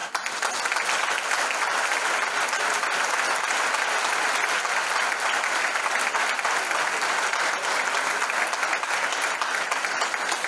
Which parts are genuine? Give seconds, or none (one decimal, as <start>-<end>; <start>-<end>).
0.0-10.5